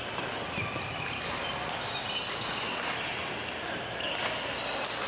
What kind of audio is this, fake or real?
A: real